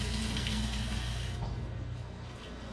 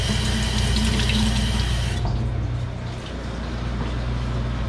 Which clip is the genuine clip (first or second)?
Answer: second